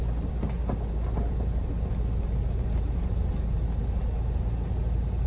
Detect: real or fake real